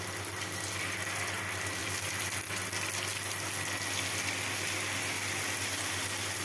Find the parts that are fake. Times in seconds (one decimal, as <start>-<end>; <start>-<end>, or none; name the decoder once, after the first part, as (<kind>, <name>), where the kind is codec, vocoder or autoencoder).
none